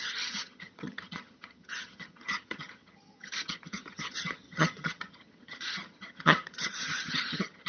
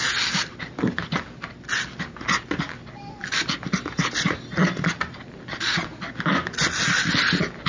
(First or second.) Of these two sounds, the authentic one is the second